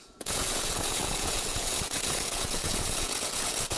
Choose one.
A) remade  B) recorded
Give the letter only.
A